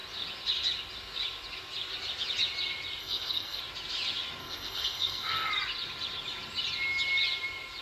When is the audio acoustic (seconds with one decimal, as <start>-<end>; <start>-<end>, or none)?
0.0-3.0; 3.6-4.4; 5.5-7.8